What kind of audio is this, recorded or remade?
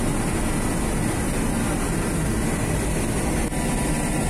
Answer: recorded